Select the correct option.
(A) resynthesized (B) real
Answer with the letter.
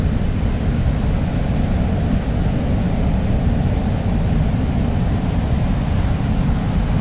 B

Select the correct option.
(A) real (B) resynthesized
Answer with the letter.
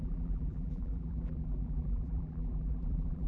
B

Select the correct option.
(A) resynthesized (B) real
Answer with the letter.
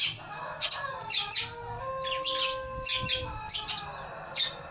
B